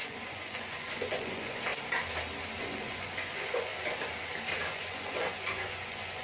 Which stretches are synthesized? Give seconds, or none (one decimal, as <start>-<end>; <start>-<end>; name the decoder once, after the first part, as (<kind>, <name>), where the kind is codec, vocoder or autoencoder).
0.0-1.7 (vocoder, Vocos); 2.6-3.7; 4.7-6.2